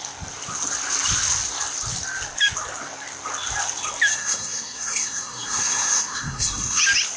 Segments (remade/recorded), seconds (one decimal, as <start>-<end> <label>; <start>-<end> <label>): 0.0-4.1 recorded; 4.1-6.8 remade; 6.8-7.2 recorded